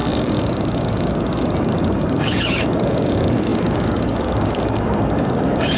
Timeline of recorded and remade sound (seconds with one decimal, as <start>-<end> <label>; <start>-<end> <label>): 0.0-5.8 remade